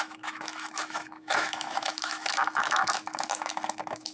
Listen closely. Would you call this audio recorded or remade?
remade